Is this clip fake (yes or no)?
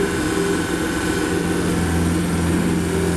no